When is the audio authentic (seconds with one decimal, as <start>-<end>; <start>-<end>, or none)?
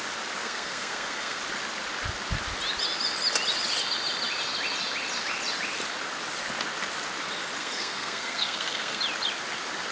0.0-0.4; 1.4-7.6; 9.0-9.9